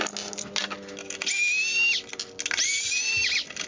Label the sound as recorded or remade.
recorded